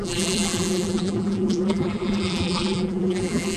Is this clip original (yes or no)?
no